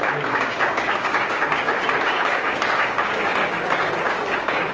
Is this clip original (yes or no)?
no